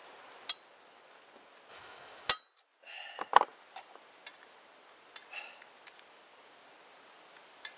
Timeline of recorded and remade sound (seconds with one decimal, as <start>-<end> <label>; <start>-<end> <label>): 0.0-1.7 recorded; 1.7-2.3 remade; 2.3-7.8 recorded

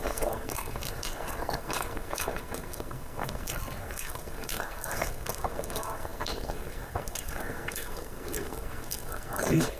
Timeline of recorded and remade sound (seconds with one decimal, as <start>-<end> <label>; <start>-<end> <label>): 0.0-9.8 remade

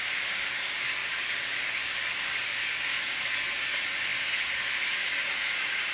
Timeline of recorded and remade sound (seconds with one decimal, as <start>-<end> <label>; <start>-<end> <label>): 0.0-5.9 remade

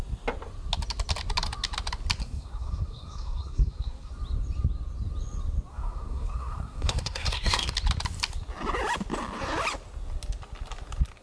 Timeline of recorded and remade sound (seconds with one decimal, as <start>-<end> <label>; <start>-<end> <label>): 0.0-2.2 recorded; 2.2-4.1 remade; 4.1-5.7 recorded; 5.7-7.7 remade; 7.7-11.2 recorded

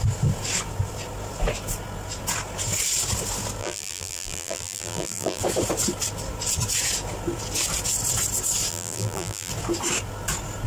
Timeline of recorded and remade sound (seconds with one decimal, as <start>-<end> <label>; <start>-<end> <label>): 0.0-3.6 recorded; 3.6-5.4 remade; 5.4-8.7 recorded; 8.7-9.5 remade; 9.5-10.7 recorded